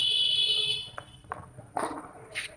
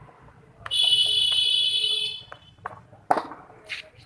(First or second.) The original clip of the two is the second